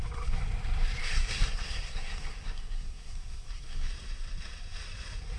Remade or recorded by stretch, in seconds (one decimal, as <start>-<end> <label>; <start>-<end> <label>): 0.0-1.0 recorded; 1.0-3.9 remade; 3.9-5.4 recorded